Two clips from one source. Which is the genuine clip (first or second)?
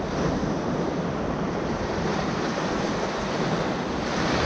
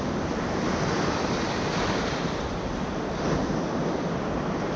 second